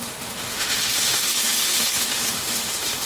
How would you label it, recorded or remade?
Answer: remade